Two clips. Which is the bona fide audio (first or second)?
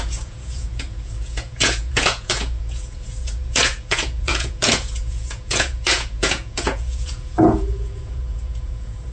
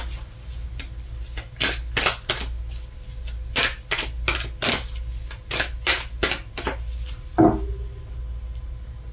second